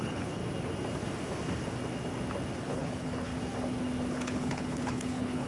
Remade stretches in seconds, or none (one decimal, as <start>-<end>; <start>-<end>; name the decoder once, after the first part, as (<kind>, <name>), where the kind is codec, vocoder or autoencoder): 0.0-0.4 (codec, HILCodec); 2.6-3.3; 4.1-5.5